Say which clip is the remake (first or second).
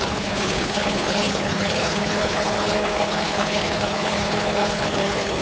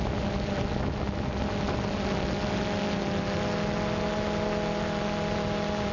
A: first